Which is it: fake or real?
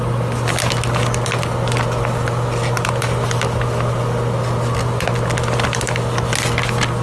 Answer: real